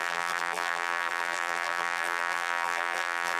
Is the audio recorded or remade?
remade